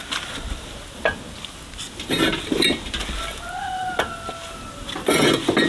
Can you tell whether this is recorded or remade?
recorded